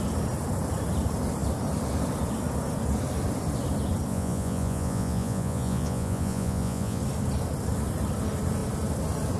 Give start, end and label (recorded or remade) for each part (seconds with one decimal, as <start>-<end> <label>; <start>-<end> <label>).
0.0-4.1 recorded; 4.1-7.0 remade; 7.0-9.4 recorded